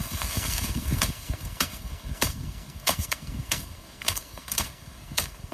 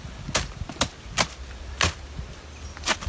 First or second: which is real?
second